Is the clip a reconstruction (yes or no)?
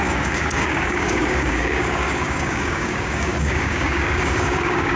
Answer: yes